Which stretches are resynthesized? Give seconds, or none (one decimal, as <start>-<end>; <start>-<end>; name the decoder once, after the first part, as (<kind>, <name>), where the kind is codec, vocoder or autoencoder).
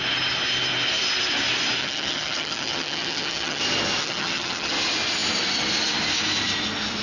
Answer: 1.8-3.6 (vocoder, HiFi-GAN); 4.0-4.7